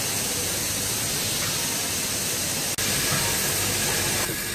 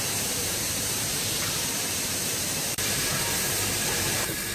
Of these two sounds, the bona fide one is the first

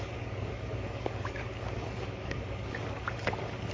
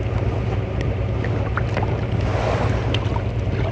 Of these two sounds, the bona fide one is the second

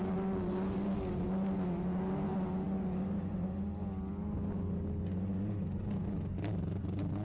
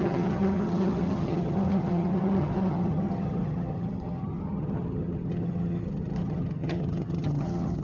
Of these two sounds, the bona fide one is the first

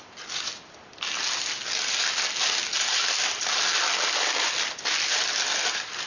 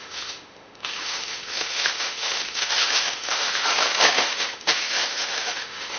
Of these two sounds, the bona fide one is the first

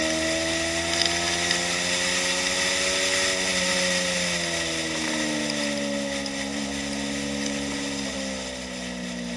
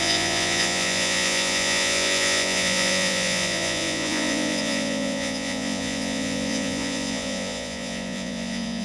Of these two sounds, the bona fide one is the first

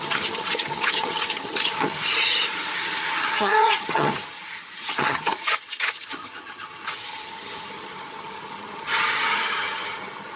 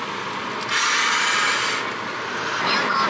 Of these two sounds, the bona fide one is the second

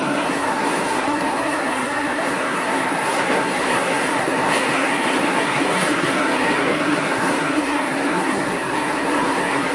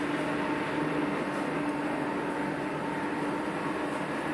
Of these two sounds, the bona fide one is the second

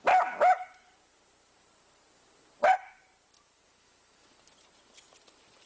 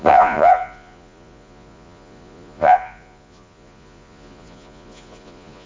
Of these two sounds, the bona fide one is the first